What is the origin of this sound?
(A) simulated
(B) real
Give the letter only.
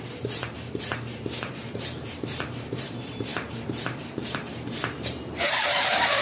A